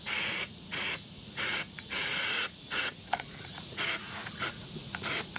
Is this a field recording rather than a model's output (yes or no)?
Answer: no